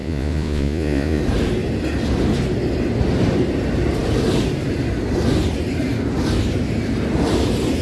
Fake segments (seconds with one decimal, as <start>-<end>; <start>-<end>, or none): 0.0-1.2